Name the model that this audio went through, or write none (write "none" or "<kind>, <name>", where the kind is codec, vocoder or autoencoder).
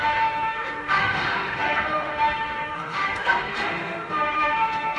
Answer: autoencoder, DAC-VAE